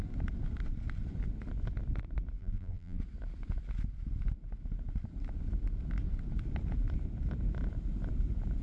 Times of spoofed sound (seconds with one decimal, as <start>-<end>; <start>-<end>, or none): 2.4-3.0